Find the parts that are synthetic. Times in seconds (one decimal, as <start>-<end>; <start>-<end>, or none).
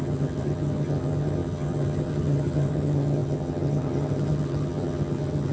0.0-5.5